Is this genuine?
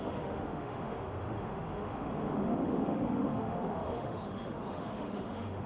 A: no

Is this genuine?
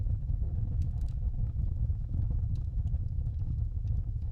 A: no